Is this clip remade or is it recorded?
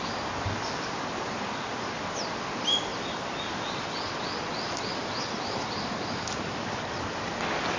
recorded